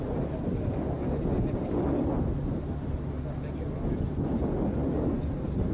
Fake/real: real